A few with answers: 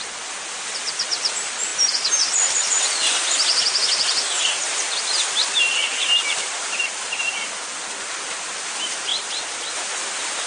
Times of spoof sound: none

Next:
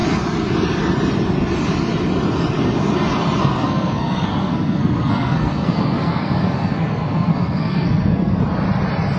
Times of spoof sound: 3.4-8.4 (codec, SNAC)

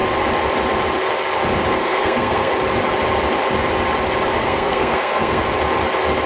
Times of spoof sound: 1.8-2.5 (codec, SNAC); 4.4-5.4

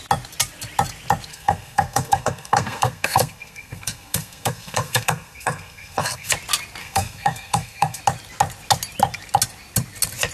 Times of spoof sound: 1.3-6.3 (codec, SNAC); 6.8-8.0

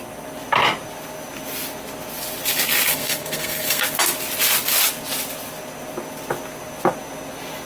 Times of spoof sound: 2.9-3.8 (codec, SNAC)

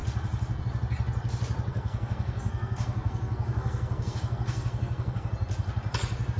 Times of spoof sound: 1.7-5.3 (codec, SNAC)